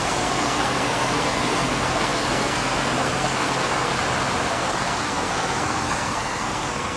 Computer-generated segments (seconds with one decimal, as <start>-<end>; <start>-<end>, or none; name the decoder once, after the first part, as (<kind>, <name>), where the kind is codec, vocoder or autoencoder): 0.0-3.9 (codec, SNAC); 4.5-7.0